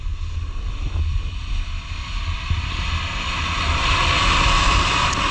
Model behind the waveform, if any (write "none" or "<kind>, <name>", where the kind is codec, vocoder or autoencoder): none